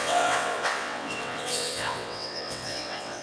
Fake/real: fake